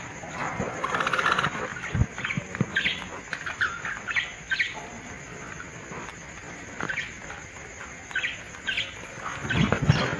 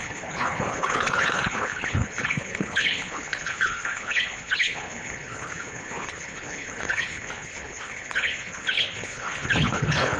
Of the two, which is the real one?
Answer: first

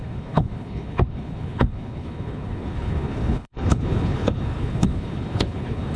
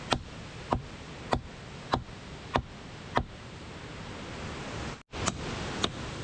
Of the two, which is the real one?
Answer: second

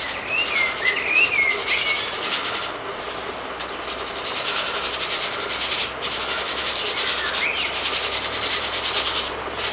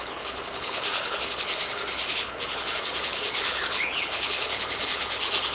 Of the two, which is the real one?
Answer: first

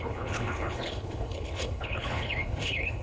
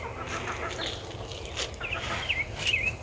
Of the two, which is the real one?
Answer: second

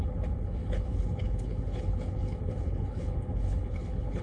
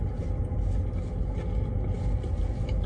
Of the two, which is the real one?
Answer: second